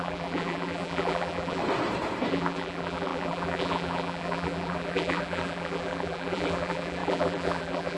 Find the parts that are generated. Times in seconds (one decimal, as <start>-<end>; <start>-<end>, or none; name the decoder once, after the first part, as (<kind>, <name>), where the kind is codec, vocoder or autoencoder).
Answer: 0.0-1.6 (vocoder, BigVGAN v2); 2.3-8.0